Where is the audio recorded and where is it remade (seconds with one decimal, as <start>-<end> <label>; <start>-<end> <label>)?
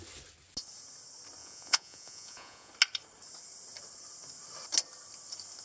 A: 0.0-1.4 recorded; 1.4-2.7 remade; 2.7-5.6 recorded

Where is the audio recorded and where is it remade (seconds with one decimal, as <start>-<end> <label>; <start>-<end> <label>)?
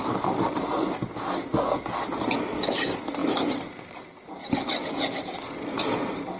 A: 0.0-6.4 recorded